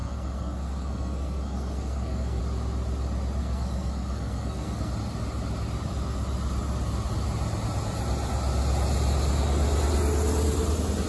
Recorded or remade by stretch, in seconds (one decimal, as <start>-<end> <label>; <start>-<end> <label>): 0.0-2.4 remade; 2.4-3.4 recorded; 3.4-4.9 remade; 4.9-11.1 recorded